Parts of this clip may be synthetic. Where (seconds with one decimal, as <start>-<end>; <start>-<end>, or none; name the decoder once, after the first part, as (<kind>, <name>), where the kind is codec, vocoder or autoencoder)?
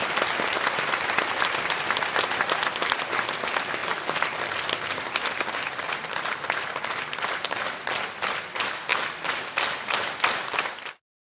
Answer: none